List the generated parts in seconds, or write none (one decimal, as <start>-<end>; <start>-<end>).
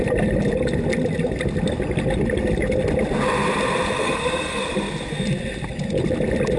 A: 4.0-4.6